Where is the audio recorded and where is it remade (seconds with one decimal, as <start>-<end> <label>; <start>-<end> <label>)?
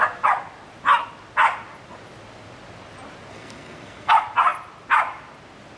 0.0-3.3 recorded; 3.3-4.1 remade; 4.1-5.8 recorded